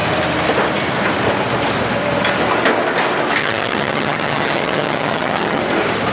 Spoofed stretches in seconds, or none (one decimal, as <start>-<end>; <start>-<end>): 3.4-5.6